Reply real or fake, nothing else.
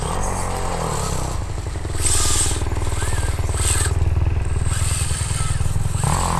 real